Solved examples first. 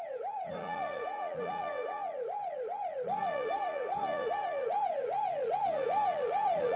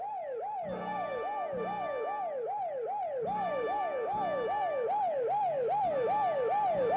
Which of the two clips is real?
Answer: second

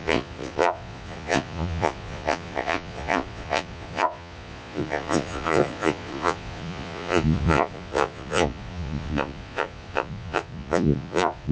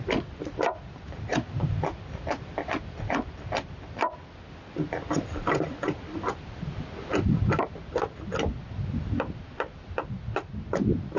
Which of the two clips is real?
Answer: second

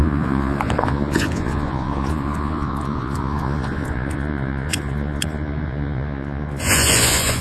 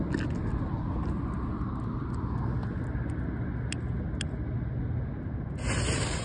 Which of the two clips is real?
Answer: second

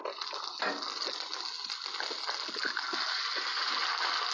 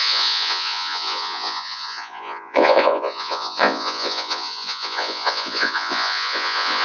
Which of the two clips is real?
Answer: first